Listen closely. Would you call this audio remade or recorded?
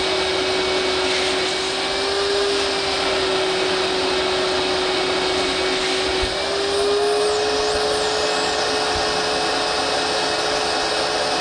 recorded